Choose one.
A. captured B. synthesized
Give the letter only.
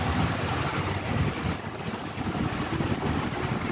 A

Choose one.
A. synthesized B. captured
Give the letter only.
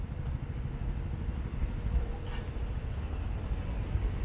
B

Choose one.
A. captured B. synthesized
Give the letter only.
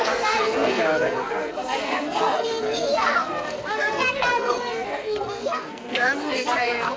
B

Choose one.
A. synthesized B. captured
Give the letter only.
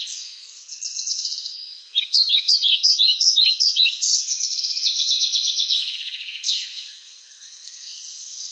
A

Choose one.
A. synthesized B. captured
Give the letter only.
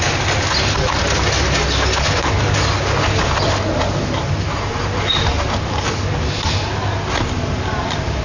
B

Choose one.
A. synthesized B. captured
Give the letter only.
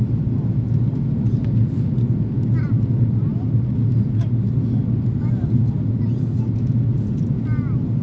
B